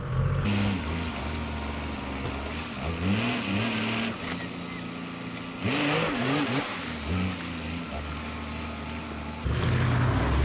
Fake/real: real